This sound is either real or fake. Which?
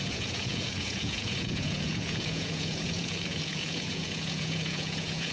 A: fake